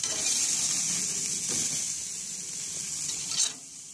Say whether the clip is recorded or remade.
recorded